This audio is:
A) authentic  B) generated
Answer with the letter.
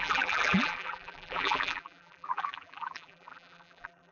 B